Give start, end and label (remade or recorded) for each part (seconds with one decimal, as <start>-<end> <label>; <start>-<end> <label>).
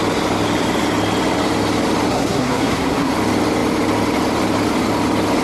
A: 0.0-2.1 recorded; 2.1-3.1 remade; 3.1-5.4 recorded